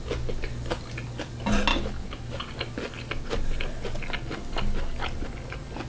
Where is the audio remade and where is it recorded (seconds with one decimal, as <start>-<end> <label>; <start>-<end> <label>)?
0.0-1.7 recorded; 1.7-2.3 remade; 2.3-5.9 recorded